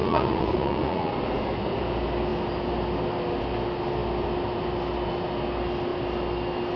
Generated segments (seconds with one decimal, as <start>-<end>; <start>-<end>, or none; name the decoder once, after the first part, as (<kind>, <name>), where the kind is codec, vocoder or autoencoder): 0.0-1.1 (vocoder, Vocos)